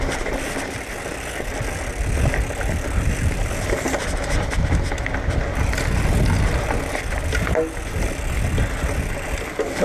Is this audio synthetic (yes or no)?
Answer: no